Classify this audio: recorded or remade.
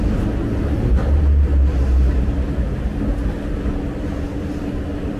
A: recorded